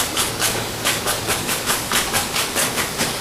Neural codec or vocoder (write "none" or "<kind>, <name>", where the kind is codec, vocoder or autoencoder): codec, DAC